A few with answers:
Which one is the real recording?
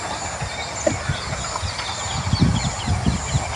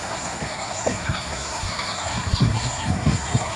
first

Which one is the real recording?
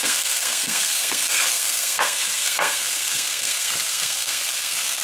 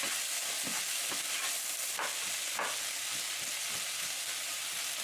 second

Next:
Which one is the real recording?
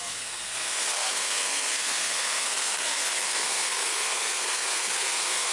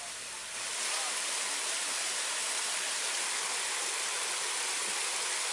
second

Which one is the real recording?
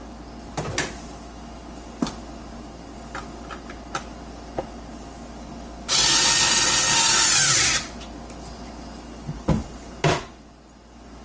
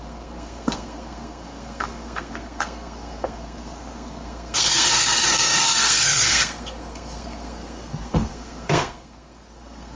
first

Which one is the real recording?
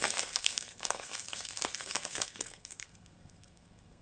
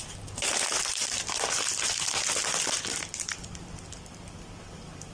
second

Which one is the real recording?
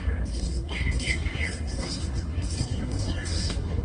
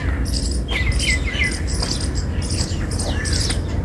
second